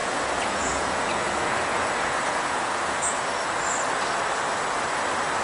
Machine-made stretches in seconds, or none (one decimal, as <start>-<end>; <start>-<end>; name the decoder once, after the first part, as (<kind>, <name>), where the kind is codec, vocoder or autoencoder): 0.0-3.2 (vocoder, Vocos)